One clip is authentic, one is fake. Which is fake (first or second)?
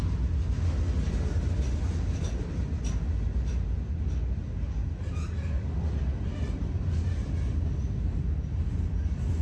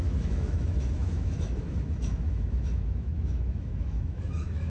second